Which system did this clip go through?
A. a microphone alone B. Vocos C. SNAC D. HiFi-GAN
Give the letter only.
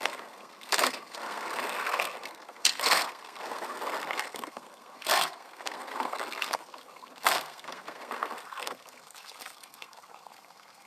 C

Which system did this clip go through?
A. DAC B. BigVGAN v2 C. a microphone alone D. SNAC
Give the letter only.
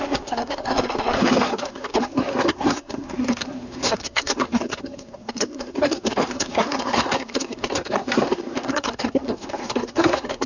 D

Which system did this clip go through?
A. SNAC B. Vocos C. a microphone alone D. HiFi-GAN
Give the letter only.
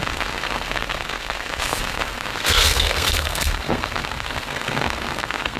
A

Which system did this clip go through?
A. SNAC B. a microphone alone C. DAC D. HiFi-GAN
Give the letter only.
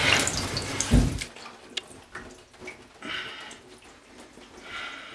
B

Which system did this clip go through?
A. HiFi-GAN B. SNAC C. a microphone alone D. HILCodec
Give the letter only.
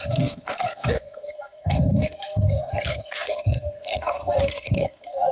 B